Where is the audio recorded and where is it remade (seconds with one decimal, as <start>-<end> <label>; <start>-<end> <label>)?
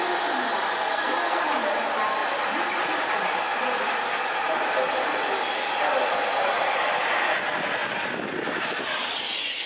0.0-0.9 recorded; 0.9-1.4 remade; 1.4-9.7 recorded